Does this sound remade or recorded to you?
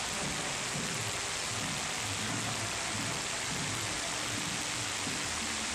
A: recorded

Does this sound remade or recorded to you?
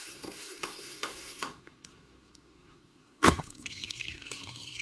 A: remade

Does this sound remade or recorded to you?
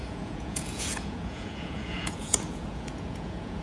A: remade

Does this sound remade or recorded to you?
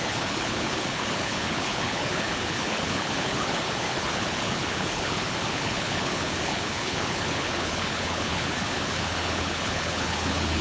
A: remade